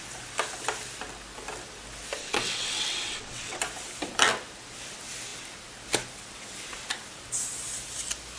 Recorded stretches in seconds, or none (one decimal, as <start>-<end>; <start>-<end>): 0.0-2.2; 3.6-8.4